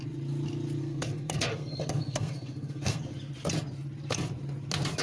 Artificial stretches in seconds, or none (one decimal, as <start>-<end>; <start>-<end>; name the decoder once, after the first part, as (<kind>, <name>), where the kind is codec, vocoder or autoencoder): 0.8-3.0 (codec, SNAC)